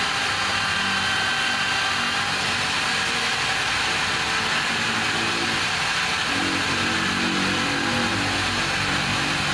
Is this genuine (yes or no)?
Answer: yes